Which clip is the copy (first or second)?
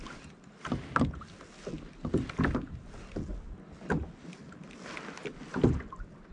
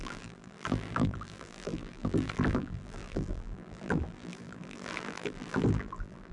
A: second